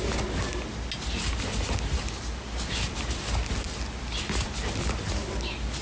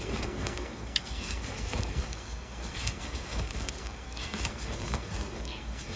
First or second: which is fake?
second